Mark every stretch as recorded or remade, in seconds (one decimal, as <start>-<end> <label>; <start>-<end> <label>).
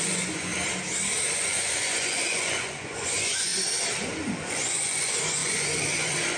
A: 0.0-0.5 remade; 0.5-1.3 recorded; 1.3-3.5 remade; 3.5-4.5 recorded; 4.5-6.4 remade